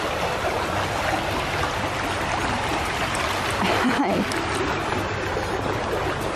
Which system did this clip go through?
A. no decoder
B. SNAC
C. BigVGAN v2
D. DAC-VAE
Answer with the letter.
A